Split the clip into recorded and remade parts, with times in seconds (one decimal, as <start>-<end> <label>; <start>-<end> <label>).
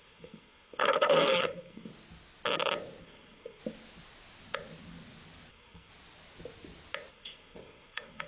0.0-1.9 remade; 1.9-3.0 recorded; 3.0-3.6 remade; 3.6-5.5 recorded; 5.5-5.9 remade; 5.9-7.1 recorded; 7.1-8.3 remade